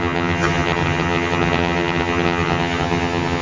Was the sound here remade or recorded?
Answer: remade